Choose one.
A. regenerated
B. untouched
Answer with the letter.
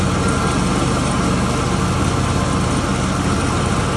B